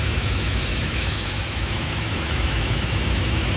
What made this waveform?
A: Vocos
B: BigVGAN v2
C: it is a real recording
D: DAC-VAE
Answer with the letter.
D